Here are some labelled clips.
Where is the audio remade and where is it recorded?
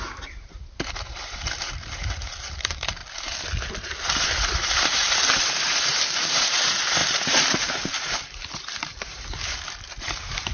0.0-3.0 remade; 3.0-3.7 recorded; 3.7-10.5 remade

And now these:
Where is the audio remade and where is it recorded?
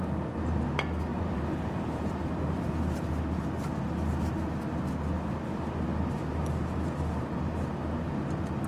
0.0-1.1 recorded; 1.1-2.3 remade; 2.3-8.7 recorded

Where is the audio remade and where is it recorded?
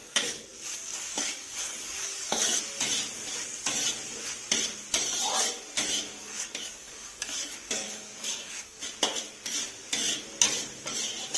0.0-2.6 remade; 2.6-6.1 recorded; 6.1-8.8 remade; 8.8-11.4 recorded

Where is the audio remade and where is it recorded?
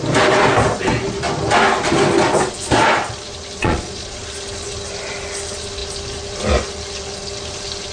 0.0-3.6 recorded; 3.6-4.2 remade; 4.2-7.9 recorded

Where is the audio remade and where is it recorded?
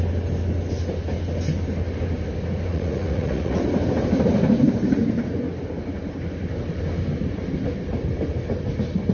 0.0-2.7 recorded; 2.7-3.6 remade; 3.6-9.1 recorded